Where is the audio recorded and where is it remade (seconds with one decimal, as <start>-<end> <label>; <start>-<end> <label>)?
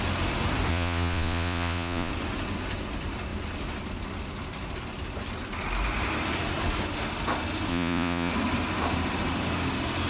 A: 0.0-0.7 recorded; 0.7-2.1 remade; 2.1-7.7 recorded; 7.7-8.3 remade; 8.3-10.1 recorded